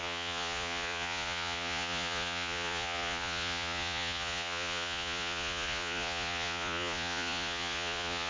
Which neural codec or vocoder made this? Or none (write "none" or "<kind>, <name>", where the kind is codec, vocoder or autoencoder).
vocoder, Vocos